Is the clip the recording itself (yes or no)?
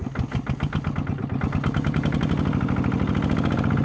yes